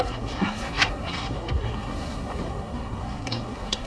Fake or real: fake